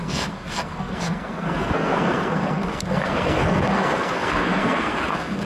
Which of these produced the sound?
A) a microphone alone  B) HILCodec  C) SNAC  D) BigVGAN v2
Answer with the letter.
C